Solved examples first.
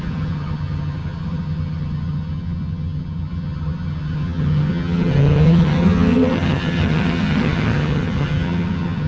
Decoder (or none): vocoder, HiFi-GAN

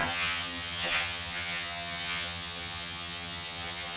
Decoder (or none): vocoder, HiFi-GAN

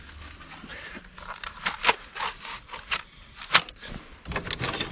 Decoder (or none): none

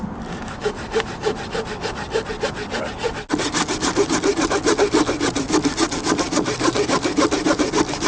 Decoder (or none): none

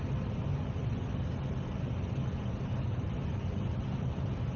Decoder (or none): none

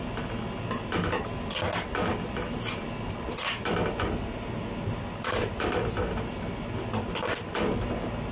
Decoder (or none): none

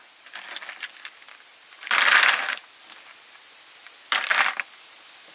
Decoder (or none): none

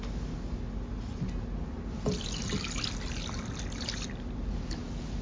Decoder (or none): none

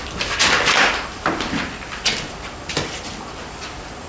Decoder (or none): none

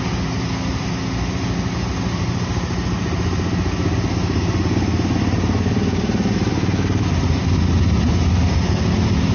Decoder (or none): none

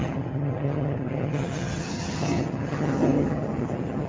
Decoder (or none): vocoder, HiFi-GAN